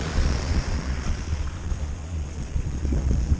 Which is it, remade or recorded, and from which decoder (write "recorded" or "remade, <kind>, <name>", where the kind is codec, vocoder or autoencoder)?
remade, vocoder, Vocos